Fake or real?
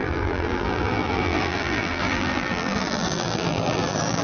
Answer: fake